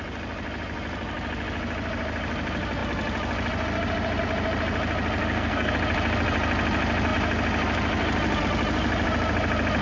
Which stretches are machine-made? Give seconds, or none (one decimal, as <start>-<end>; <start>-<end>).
5.2-5.7